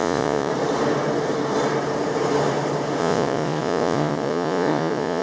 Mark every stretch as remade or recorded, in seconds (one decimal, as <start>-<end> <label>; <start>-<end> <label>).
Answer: 0.0-0.5 remade; 0.5-3.0 recorded; 3.0-5.2 remade